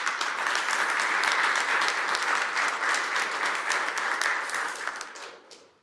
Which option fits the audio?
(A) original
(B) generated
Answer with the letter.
A